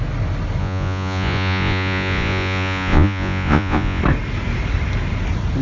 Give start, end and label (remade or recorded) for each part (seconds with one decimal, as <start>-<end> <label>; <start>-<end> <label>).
0.0-0.6 recorded; 0.6-4.0 remade; 4.0-5.6 recorded